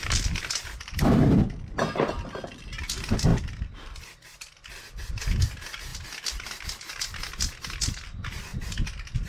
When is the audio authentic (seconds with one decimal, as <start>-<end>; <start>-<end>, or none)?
0.0-9.3